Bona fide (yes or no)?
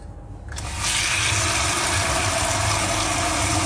yes